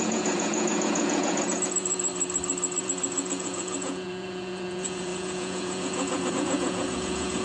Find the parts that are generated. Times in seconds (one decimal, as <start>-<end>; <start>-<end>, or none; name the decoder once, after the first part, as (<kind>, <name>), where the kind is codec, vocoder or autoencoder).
0.0-2.1 (vocoder, Vocos); 2.8-7.4